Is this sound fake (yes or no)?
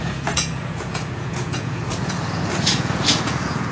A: yes